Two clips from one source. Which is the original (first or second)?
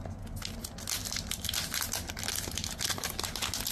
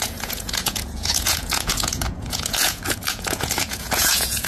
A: first